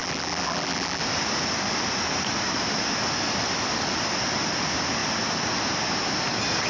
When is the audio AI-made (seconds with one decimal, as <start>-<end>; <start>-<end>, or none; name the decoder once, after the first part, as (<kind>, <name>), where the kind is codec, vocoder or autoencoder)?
0.0-1.0 (vocoder, BigVGAN v2)